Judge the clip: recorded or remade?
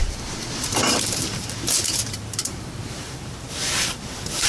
remade